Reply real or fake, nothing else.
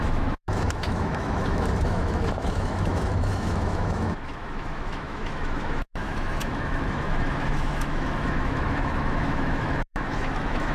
fake